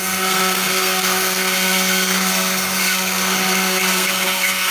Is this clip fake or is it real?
fake